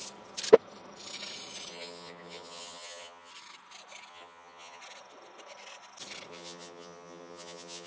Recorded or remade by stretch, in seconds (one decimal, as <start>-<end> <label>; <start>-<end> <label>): 0.0-1.7 recorded; 1.7-3.3 remade; 3.3-4.1 recorded; 4.1-4.8 remade; 4.8-6.3 recorded; 6.3-7.9 remade